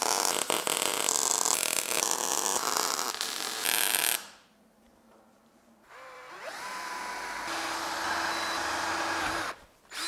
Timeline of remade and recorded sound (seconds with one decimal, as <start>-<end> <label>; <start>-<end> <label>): 0.0-2.5 recorded; 2.5-7.0 remade; 7.0-10.1 recorded